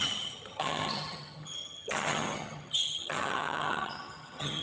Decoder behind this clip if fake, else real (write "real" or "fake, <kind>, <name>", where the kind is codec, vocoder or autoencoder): fake, vocoder, HiFi-GAN